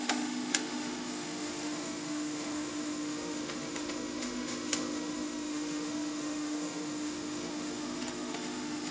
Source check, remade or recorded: remade